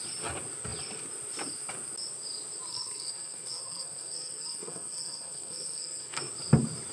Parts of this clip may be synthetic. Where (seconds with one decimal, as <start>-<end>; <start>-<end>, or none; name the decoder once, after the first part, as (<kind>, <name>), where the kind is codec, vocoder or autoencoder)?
2.7-6.2 (codec, SNAC)